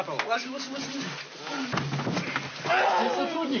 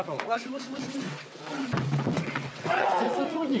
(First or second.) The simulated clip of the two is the second